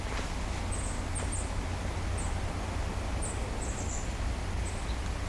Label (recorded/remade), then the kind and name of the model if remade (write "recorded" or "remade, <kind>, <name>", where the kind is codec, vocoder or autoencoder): recorded